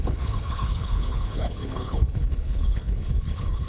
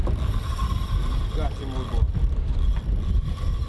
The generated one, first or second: first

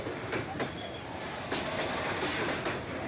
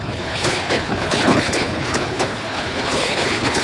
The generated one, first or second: second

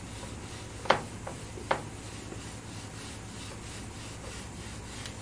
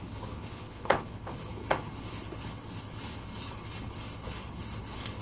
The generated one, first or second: second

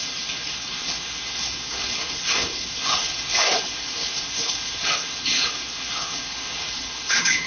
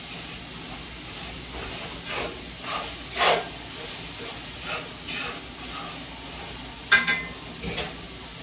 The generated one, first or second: first